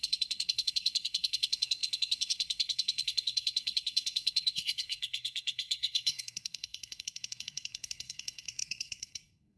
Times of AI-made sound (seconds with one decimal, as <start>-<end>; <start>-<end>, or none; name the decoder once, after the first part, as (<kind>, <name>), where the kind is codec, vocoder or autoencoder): 0.0-9.6 (codec, SNAC)